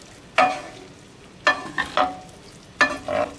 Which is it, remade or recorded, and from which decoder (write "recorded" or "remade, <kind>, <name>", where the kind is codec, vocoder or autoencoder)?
recorded